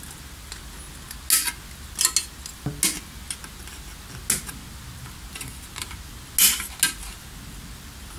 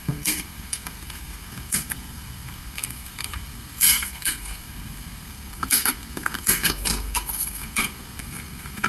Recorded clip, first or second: first